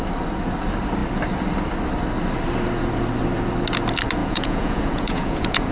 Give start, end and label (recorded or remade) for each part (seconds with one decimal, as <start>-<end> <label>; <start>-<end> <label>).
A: 0.0-4.2 recorded; 4.2-5.7 remade